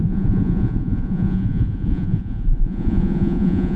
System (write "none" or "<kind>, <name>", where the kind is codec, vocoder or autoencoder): vocoder, Vocos